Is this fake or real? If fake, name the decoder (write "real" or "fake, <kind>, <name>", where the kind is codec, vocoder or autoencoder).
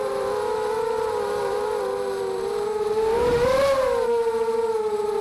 fake, vocoder, BigVGAN v2